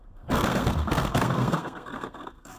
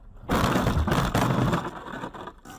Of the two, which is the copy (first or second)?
first